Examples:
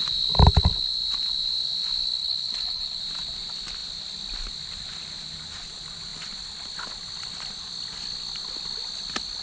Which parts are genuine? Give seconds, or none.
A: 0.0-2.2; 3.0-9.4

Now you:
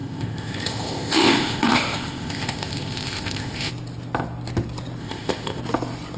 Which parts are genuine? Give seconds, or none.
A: 3.7-5.0; 5.6-6.2

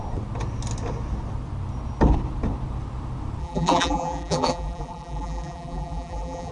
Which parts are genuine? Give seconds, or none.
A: 0.0-3.4

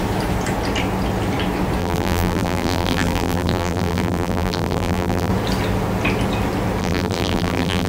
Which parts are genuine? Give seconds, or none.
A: 0.0-1.8; 5.3-6.8